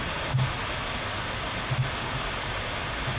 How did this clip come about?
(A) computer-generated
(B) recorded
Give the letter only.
B